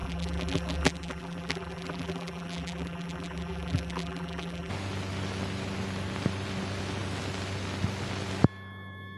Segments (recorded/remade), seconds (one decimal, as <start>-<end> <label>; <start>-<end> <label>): 0.0-4.7 remade; 4.7-9.2 recorded